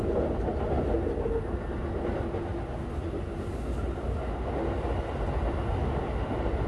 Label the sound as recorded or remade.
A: recorded